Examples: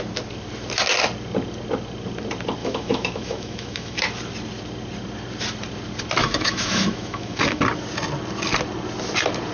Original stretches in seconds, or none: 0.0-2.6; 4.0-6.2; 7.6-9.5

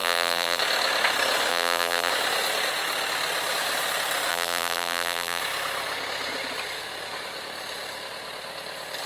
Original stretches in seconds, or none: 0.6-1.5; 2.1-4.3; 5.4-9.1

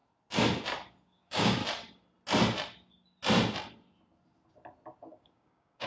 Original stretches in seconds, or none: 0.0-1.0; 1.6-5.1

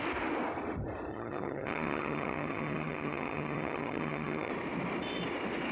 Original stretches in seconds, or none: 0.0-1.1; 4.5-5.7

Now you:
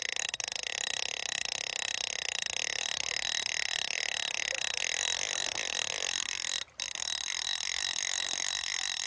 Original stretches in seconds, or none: 0.0-9.1

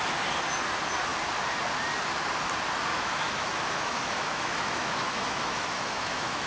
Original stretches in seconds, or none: 0.0-2.9

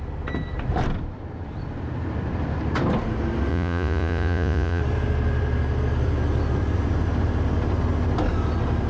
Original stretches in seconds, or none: 0.0-3.5; 4.8-8.9